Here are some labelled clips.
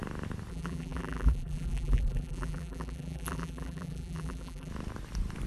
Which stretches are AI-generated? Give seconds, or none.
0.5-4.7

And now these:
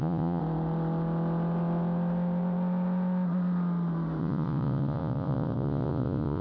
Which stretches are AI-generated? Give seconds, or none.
0.0-0.4; 4.2-6.4

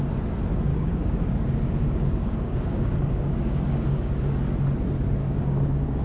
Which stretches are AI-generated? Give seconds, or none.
0.7-4.3; 5.2-6.0

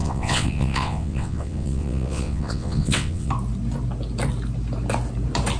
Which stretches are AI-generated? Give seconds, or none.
0.0-3.3

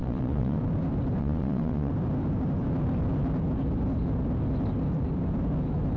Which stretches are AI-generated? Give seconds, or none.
0.0-0.6; 1.2-1.9